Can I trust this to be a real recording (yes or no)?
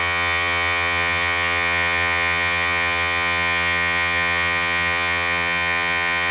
no